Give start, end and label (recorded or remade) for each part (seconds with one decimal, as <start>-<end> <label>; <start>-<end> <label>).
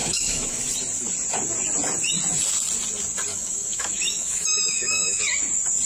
0.0-0.6 remade; 0.6-3.3 recorded; 3.3-5.2 remade; 5.2-5.9 recorded